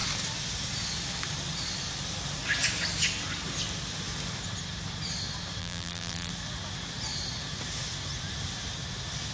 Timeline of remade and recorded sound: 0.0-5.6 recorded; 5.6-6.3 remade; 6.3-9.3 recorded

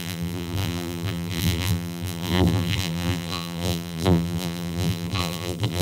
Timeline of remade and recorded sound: 0.0-5.8 remade

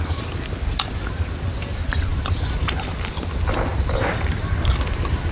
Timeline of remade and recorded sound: 0.0-2.1 recorded; 2.1-3.1 remade; 3.1-3.7 recorded; 3.7-4.7 remade; 4.7-5.3 recorded

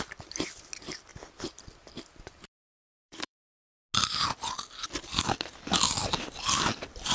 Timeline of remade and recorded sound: 0.0-1.1 recorded; 1.1-3.6 remade; 3.6-7.1 recorded

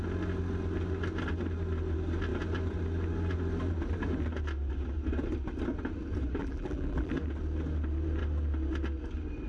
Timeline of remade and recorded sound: 0.0-6.4 recorded; 6.4-7.1 remade; 7.1-9.5 recorded

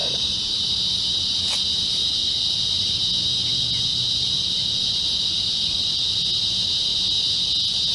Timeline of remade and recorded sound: 0.0-0.7 remade; 0.7-2.0 recorded; 2.0-2.8 remade; 2.8-3.9 recorded; 3.9-6.1 remade; 6.1-7.9 recorded

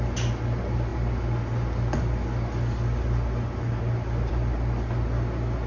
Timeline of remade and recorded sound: 0.0-5.7 recorded